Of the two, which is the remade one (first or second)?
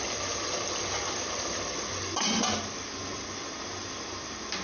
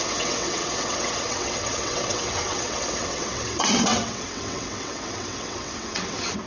second